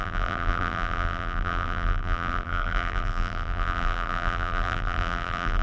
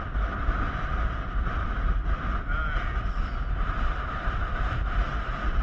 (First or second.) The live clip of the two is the second